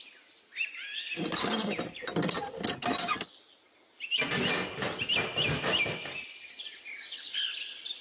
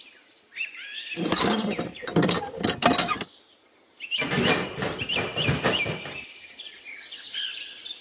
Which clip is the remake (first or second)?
second